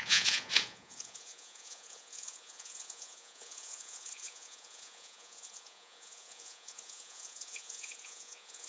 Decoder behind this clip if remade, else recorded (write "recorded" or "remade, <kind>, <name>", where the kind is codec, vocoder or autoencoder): remade, vocoder, Vocos